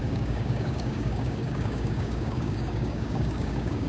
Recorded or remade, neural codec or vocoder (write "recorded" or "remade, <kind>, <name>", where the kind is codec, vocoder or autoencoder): remade, codec, DAC